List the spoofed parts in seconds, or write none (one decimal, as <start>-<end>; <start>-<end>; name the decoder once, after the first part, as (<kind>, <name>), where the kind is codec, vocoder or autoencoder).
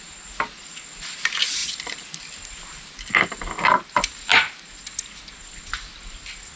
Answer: none